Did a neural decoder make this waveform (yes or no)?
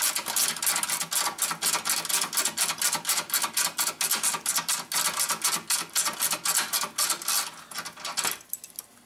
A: no